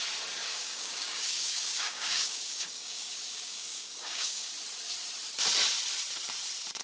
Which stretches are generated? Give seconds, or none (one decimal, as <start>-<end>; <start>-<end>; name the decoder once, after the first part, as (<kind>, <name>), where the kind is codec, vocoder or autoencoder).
0.4-4.5 (codec, DAC)